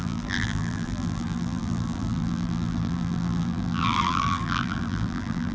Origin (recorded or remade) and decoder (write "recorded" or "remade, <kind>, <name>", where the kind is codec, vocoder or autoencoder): remade, vocoder, BigVGAN v2